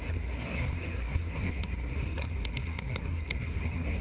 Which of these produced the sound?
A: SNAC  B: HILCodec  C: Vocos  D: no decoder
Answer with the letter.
A